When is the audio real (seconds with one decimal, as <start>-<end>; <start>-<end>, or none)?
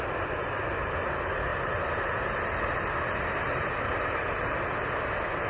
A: 0.0-5.5